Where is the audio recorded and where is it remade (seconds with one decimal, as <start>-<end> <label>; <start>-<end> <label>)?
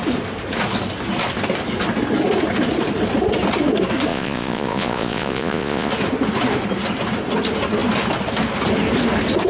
0.0-4.1 recorded; 4.1-5.9 remade; 5.9-9.5 recorded